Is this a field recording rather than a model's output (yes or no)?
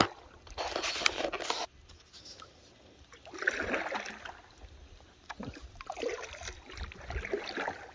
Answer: yes